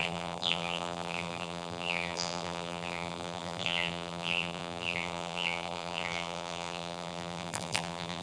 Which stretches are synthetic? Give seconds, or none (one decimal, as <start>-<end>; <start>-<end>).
0.0-8.2